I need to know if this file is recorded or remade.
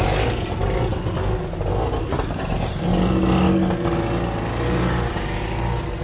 recorded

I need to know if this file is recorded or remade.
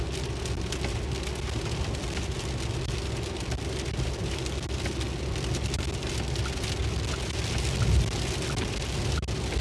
recorded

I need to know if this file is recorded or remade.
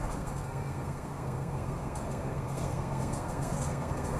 remade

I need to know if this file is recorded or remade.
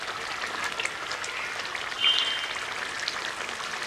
recorded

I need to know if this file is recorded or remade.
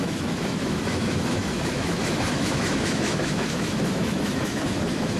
remade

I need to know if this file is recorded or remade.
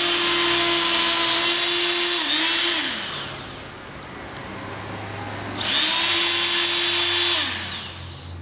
recorded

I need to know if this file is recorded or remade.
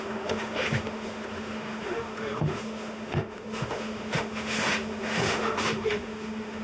remade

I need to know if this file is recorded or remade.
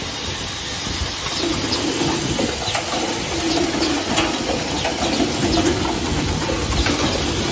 recorded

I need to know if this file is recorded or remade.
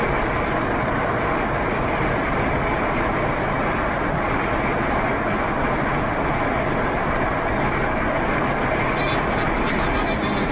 recorded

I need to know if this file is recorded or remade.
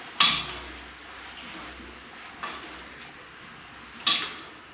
recorded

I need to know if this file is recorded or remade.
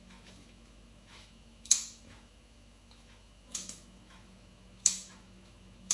remade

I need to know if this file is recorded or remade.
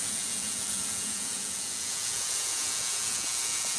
remade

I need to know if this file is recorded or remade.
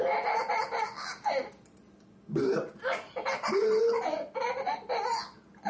recorded